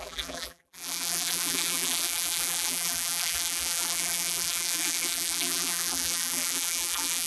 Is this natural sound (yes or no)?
no